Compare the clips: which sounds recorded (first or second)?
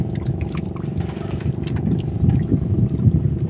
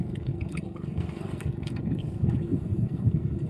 first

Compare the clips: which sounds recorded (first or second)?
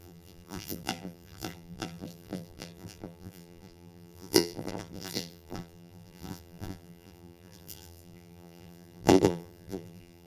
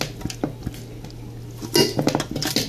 second